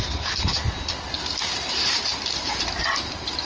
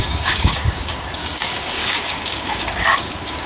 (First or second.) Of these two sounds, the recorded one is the first